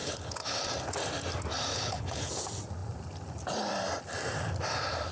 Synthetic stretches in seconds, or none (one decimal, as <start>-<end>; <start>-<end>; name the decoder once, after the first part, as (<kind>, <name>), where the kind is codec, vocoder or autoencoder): 0.0-0.6 (codec, HILCodec); 1.7-2.3